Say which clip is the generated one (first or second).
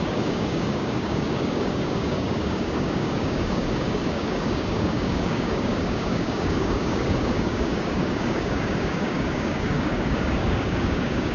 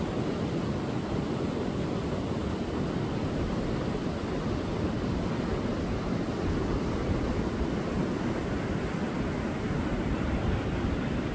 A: first